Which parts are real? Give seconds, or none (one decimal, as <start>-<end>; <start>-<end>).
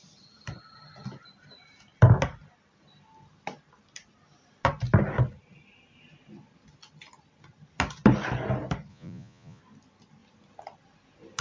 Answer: 0.0-8.9; 9.6-11.4